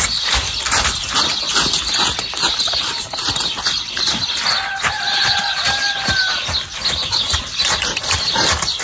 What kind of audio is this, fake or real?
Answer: real